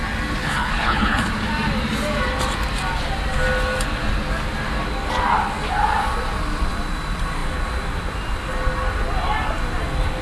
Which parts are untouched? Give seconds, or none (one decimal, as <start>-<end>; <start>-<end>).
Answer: 0.0-0.4; 1.3-10.2